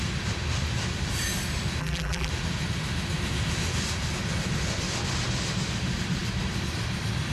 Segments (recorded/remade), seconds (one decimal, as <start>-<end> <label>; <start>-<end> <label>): 0.0-1.8 recorded; 1.8-2.3 remade; 2.3-7.3 recorded